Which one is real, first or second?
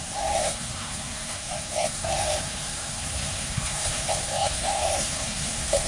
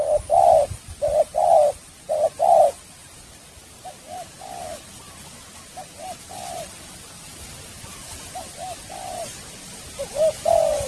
second